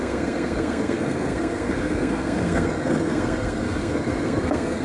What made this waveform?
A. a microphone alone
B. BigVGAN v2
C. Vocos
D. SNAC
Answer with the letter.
D